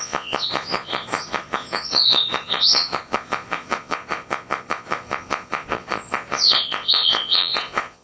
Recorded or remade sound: remade